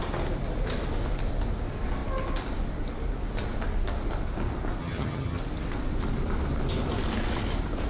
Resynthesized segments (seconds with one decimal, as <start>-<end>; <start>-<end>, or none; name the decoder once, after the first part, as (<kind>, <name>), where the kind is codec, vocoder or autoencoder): 4.8-5.4 (vocoder, HiFi-GAN)